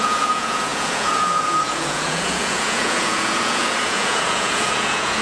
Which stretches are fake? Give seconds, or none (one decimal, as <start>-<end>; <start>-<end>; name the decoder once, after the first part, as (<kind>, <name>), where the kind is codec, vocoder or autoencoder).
0.0-5.2 (vocoder, Vocos)